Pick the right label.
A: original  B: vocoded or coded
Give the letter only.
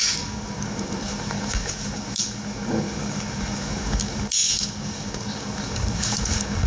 B